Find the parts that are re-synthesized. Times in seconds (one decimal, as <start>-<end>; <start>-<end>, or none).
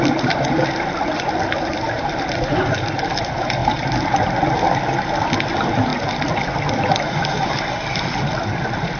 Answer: 0.0-3.6; 5.5-9.0